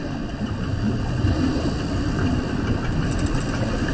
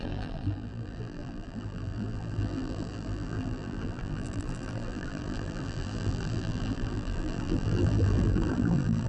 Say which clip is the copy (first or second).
second